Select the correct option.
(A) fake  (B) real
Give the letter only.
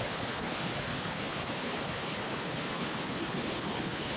A